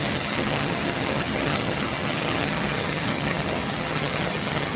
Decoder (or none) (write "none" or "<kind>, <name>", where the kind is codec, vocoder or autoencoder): vocoder, HiFi-GAN